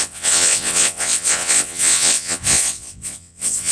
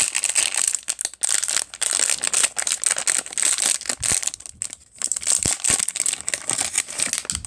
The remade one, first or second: first